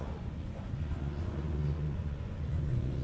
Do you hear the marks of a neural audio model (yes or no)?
yes